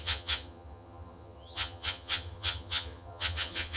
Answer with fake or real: fake